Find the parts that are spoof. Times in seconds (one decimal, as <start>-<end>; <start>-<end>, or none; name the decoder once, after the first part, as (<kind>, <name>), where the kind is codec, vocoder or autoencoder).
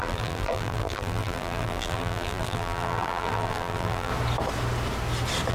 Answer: 0.0-4.1 (vocoder, BigVGAN v2)